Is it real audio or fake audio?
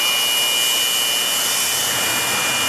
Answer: real